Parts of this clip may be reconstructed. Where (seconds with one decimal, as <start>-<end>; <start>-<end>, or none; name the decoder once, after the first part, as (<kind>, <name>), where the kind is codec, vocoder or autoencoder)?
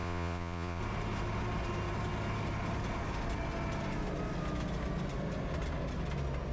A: 0.0-0.8 (vocoder, Vocos)